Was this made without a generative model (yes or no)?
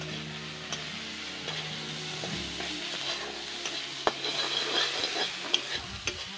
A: yes